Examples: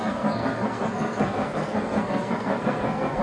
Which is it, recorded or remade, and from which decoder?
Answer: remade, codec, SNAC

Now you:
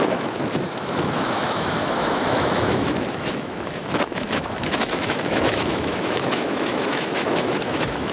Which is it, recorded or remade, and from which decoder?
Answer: remade, autoencoder, DAC-VAE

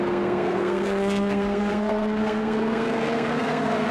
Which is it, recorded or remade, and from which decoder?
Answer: remade, codec, SNAC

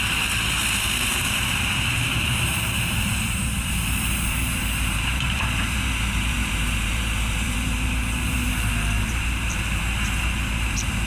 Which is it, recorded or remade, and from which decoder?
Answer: remade, vocoder, BigVGAN v2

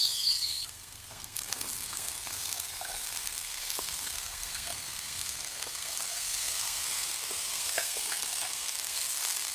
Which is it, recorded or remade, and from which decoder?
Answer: remade, codec, SNAC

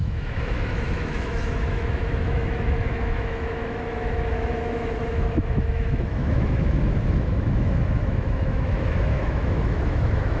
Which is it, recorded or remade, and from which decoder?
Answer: remade, autoencoder, DAC-VAE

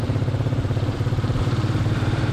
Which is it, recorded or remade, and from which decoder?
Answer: remade, vocoder, BigVGAN v2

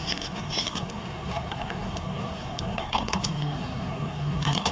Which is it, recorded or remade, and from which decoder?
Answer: remade, codec, SNAC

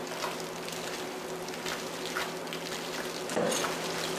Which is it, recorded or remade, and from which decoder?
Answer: recorded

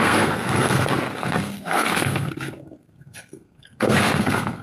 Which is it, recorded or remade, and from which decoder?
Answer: remade, codec, SNAC